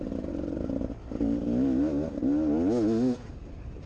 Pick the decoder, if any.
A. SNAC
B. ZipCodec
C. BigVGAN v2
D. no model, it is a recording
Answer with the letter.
D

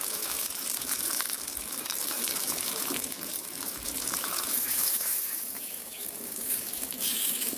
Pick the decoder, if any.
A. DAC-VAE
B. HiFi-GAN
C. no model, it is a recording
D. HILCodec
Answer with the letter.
A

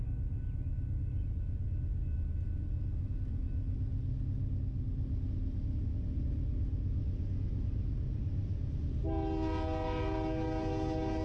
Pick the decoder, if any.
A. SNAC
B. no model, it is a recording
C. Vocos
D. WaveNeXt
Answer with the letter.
B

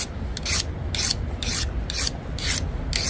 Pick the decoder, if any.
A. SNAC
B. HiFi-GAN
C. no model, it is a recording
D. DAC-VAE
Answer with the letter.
C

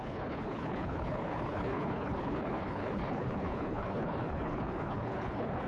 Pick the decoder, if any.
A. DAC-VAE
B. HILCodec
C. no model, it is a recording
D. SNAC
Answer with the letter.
B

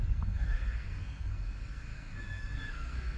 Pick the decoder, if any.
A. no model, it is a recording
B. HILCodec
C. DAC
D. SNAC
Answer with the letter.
D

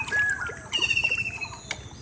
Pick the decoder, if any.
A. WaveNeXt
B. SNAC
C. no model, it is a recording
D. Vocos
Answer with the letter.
C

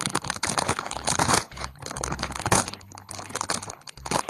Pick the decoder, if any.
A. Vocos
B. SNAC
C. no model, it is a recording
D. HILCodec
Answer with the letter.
D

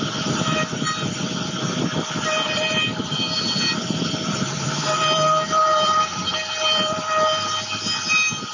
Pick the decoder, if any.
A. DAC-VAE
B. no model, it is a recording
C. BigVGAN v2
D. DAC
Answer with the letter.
C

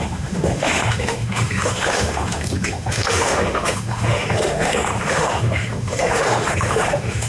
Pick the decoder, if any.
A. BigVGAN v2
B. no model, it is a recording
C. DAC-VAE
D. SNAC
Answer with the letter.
C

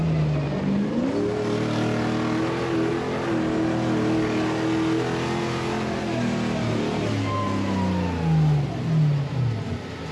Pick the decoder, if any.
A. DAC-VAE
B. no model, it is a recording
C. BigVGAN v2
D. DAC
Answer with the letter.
B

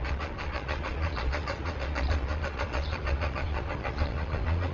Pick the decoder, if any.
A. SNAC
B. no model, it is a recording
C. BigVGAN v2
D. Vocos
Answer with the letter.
D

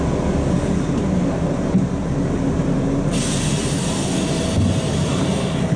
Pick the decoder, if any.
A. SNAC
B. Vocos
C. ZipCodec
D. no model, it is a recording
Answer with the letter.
D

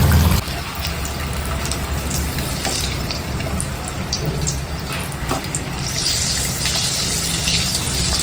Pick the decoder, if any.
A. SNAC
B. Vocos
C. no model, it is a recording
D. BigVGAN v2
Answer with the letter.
C